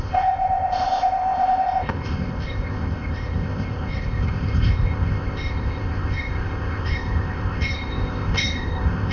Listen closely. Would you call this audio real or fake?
fake